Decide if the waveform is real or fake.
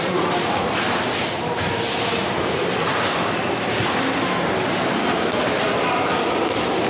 real